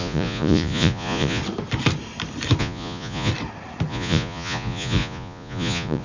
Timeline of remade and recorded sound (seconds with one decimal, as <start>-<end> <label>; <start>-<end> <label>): 0.0-1.4 remade; 1.4-2.6 recorded; 2.6-3.3 remade; 3.3-3.9 recorded; 3.9-6.0 remade